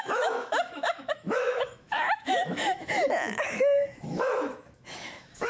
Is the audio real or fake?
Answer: fake